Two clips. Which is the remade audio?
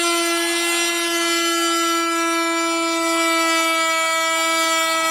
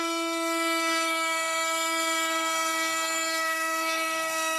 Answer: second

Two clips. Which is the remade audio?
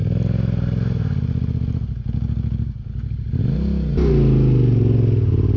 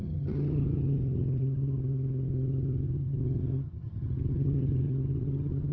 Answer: second